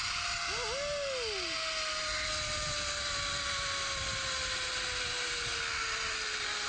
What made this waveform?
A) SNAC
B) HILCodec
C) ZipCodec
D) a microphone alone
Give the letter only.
D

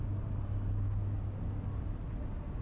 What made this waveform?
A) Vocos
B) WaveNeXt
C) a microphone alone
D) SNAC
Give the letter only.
C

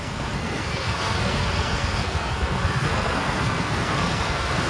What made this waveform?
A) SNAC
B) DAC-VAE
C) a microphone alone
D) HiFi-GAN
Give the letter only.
A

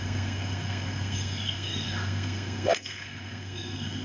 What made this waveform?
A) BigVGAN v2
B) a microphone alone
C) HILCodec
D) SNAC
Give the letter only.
D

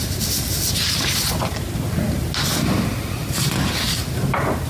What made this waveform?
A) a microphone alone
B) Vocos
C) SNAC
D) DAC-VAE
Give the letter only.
A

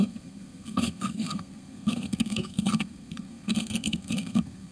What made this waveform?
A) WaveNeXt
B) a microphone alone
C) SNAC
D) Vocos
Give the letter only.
C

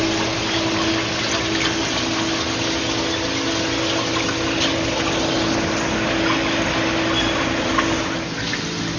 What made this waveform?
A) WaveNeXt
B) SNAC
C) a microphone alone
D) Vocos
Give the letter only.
C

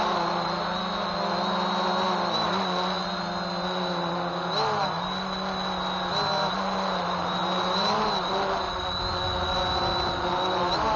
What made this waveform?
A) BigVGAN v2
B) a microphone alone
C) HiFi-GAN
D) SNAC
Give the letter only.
B